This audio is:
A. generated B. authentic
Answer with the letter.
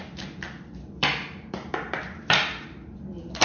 A